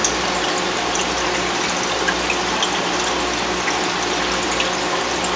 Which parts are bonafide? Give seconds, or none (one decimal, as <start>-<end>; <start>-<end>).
0.0-5.4